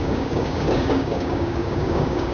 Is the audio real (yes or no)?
no